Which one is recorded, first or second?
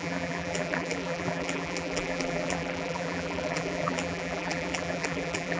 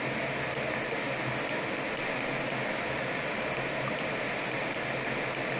second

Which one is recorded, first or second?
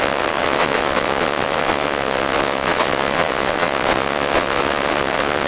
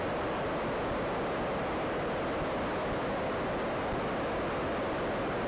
second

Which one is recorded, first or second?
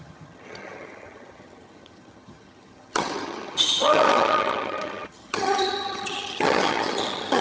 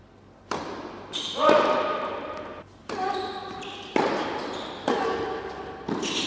second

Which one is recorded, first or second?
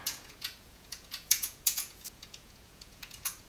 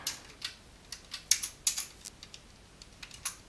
second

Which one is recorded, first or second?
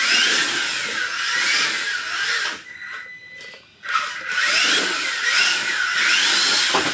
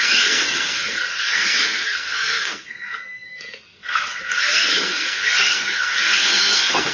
first